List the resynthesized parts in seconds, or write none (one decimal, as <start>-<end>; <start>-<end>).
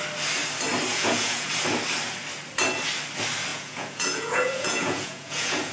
0.9-1.5; 3.5-5.7